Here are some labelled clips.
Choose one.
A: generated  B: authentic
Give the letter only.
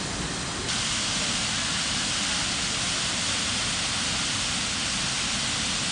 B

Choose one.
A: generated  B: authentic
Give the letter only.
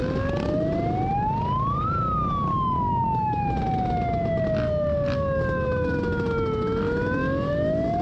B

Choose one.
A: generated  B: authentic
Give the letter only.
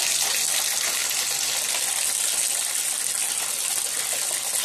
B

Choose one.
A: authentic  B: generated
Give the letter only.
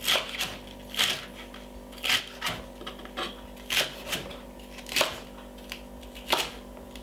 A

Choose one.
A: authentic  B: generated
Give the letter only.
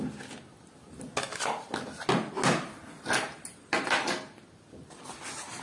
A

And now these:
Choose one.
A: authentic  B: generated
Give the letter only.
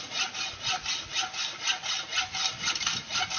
A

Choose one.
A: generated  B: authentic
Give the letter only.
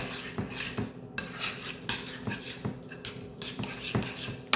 B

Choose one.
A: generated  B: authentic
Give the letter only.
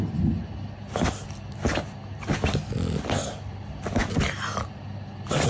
B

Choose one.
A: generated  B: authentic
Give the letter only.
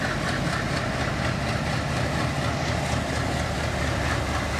B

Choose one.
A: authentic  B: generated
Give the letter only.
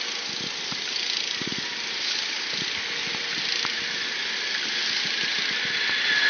A